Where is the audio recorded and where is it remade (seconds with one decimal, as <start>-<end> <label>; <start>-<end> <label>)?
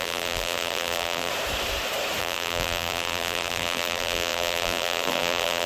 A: 0.0-1.3 remade; 1.3-2.2 recorded; 2.2-5.7 remade